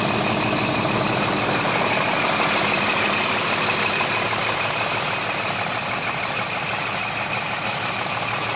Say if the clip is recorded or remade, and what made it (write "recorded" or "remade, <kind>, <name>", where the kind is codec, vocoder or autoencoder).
recorded